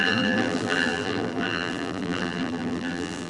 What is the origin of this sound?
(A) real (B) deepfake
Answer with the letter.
B